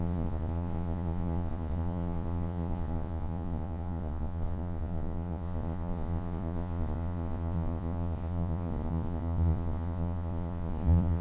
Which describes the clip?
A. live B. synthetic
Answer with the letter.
B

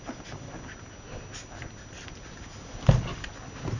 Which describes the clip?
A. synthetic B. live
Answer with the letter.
B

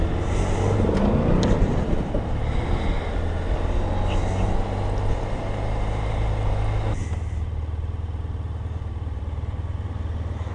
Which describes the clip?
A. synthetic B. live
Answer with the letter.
B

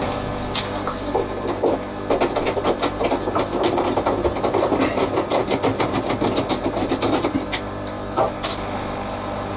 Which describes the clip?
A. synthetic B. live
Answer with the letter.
B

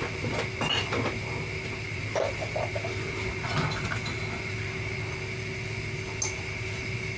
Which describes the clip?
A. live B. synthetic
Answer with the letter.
A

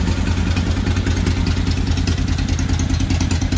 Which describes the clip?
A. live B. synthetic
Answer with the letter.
A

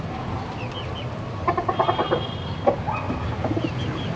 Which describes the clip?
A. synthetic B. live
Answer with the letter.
B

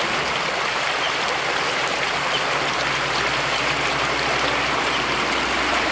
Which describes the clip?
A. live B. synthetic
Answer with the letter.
A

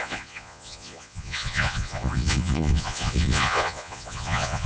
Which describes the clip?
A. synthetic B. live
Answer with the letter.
A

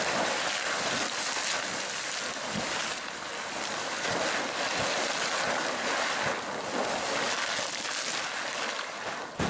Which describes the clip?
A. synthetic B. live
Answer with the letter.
B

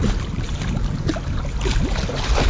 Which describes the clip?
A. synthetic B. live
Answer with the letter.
B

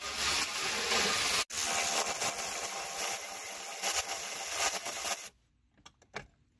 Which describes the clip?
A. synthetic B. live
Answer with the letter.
B